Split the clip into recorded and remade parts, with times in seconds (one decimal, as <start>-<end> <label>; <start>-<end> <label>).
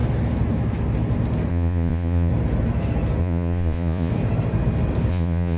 0.0-1.5 recorded; 1.5-2.3 remade; 2.3-3.2 recorded; 3.2-4.1 remade; 4.1-5.1 recorded; 5.1-5.6 remade